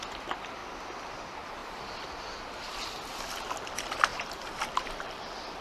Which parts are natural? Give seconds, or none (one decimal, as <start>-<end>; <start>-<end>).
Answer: 0.0-1.6; 2.1-4.1